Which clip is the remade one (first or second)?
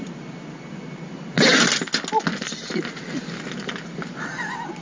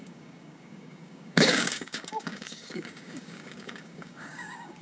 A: second